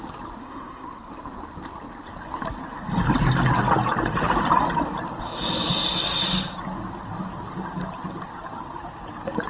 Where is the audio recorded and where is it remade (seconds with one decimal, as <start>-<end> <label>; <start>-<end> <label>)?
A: 0.0-0.4 recorded; 0.4-1.1 remade; 1.1-9.5 recorded